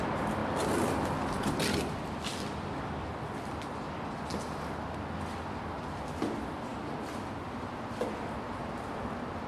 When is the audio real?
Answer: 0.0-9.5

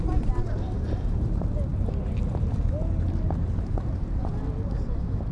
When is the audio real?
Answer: 0.0-5.3